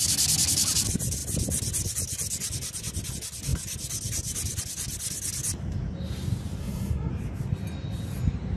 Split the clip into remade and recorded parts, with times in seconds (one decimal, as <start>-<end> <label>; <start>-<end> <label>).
0.0-6.6 recorded; 6.6-7.1 remade; 7.1-8.6 recorded